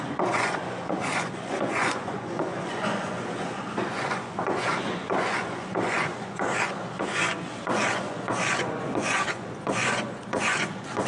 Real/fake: fake